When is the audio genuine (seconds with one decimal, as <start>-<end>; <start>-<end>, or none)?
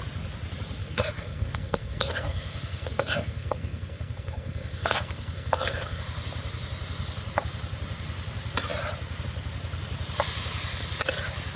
0.0-0.8; 6.0-11.6